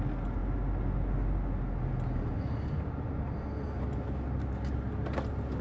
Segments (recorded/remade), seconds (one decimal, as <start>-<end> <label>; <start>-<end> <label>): 0.0-5.6 recorded